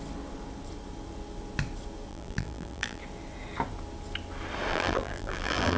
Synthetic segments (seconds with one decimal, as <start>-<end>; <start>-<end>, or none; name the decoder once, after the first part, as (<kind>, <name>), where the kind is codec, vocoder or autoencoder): 2.1-3.0 (vocoder, BigVGAN v2); 4.7-5.8